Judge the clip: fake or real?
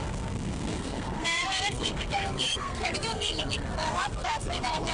fake